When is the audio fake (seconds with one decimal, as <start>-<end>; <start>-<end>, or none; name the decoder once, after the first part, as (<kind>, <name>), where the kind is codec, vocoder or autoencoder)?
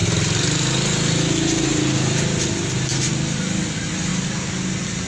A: none